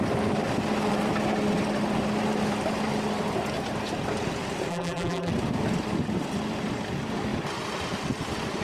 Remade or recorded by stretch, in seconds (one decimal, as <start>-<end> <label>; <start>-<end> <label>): 0.0-4.7 recorded; 4.7-5.3 remade; 5.3-8.6 recorded

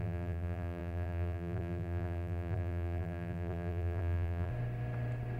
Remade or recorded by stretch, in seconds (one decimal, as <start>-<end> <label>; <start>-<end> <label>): 0.0-4.5 remade; 4.5-5.4 recorded

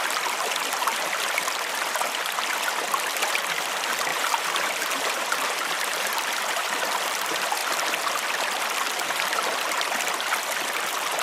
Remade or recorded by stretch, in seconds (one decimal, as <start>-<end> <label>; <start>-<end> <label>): 0.0-4.1 recorded; 4.1-6.8 remade; 6.8-11.2 recorded

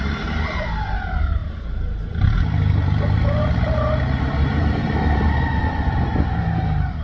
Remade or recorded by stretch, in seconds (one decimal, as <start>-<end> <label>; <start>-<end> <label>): 0.0-7.0 remade

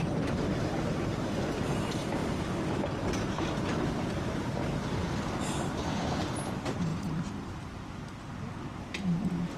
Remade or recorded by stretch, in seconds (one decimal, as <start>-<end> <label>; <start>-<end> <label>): 0.0-2.2 recorded; 2.2-3.3 remade; 3.3-5.0 recorded; 5.0-6.0 remade; 6.0-6.9 recorded; 6.9-7.4 remade; 7.4-9.6 recorded

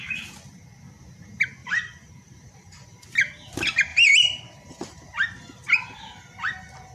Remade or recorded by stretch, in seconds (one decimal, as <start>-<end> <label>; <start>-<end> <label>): 0.0-1.6 recorded; 1.6-3.0 remade; 3.0-3.9 recorded; 3.9-5.7 remade; 5.7-6.9 recorded

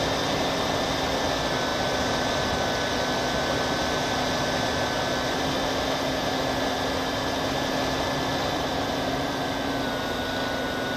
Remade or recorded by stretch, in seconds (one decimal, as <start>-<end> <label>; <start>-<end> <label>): 0.0-8.3 recorded; 8.3-9.3 remade; 9.3-11.0 recorded